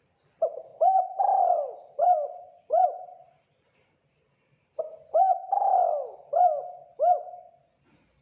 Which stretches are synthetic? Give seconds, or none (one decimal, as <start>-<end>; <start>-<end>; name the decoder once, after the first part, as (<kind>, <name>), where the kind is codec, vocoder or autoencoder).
0.7-4.8 (vocoder, BigVGAN v2)